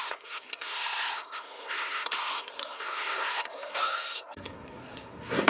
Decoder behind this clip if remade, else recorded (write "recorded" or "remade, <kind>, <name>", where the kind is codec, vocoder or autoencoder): remade, codec, SNAC